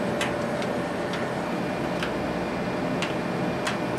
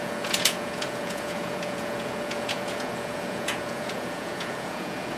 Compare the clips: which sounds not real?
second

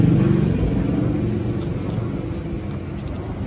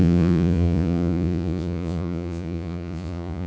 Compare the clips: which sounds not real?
second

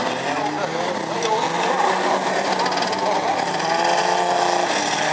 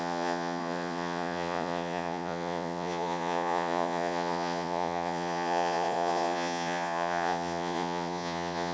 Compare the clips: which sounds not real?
second